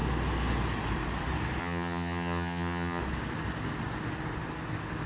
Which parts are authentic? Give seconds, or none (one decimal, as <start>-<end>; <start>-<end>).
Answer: 0.0-1.6; 3.0-5.1